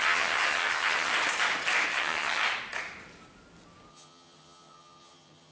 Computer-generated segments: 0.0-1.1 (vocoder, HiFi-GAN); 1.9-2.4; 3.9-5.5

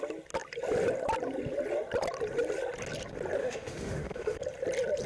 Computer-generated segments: 3.4-4.4 (autoencoder, DAC-VAE)

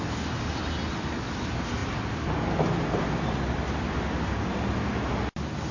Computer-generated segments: none

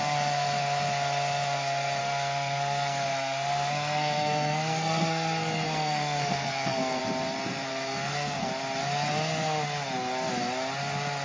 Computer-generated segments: 2.0-7.0 (codec, SNAC); 7.7-8.5

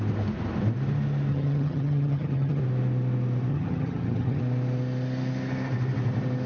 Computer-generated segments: 1.3-2.6 (vocoder, HiFi-GAN); 3.5-4.4

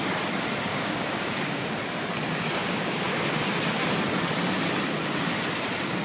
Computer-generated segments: 0.7-1.7 (codec, DAC); 2.6-3.4

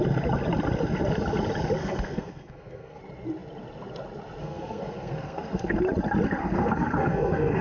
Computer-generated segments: 1.8-3.0 (codec, SNAC); 4.4-5.8; 6.4-7.6